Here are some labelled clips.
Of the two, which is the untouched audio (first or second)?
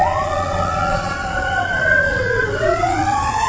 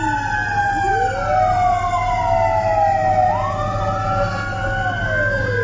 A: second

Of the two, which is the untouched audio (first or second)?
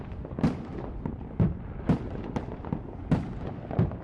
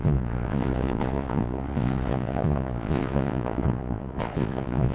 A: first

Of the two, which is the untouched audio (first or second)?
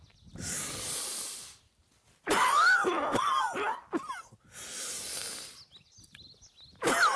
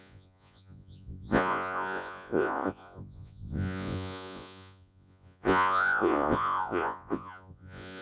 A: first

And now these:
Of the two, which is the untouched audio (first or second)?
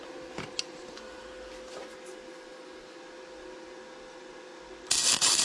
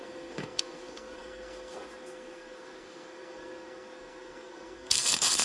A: first